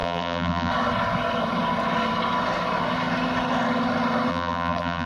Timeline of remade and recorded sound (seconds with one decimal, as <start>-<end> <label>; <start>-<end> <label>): 0.0-0.7 remade; 0.7-4.3 recorded; 4.3-5.1 remade